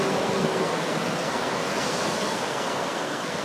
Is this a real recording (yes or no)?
no